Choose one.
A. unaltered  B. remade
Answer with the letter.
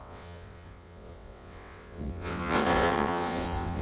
B